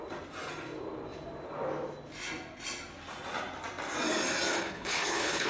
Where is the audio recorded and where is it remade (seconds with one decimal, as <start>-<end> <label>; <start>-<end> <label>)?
0.0-4.5 recorded; 4.5-5.5 remade

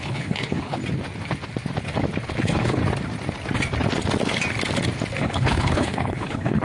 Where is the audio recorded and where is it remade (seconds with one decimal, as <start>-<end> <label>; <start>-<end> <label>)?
0.0-0.8 remade; 0.8-2.4 recorded; 2.4-2.8 remade; 2.8-5.2 recorded; 5.2-6.6 remade

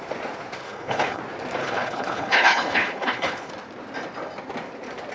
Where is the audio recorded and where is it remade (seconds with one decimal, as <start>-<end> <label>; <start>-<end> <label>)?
0.0-0.6 recorded; 0.6-1.2 remade; 1.2-1.6 recorded; 1.6-3.5 remade; 3.5-5.1 recorded